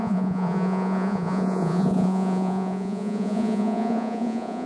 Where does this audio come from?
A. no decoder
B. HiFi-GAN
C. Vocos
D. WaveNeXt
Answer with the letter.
C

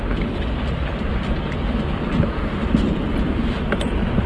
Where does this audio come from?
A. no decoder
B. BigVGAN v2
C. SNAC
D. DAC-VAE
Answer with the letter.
B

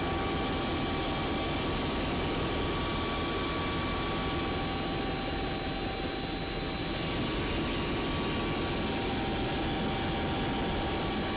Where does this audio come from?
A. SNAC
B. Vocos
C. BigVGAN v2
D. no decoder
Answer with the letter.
D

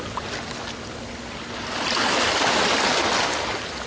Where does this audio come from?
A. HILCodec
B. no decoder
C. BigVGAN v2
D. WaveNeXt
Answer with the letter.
B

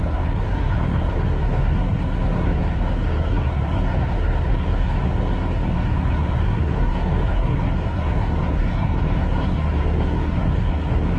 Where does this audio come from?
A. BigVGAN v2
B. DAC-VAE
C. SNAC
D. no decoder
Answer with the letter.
C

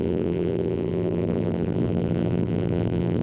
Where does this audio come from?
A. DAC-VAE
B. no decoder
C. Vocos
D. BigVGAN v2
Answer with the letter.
D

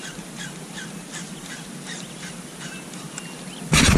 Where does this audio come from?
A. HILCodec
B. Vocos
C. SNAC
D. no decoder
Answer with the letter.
D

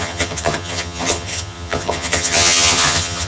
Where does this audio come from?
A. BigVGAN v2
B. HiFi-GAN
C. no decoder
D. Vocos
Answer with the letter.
B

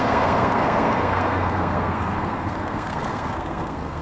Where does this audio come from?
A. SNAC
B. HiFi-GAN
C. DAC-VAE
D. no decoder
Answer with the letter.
A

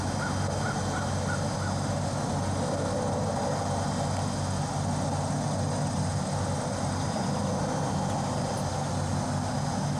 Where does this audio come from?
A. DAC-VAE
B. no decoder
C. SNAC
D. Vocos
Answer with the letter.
B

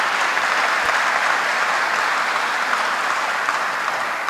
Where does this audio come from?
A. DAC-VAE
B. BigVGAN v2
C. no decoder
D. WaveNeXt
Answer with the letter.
C